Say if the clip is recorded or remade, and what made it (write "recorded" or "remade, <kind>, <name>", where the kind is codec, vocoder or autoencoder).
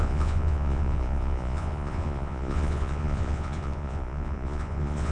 remade, vocoder, Vocos